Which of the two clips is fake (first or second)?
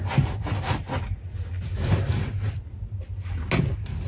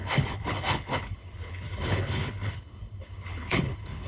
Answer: second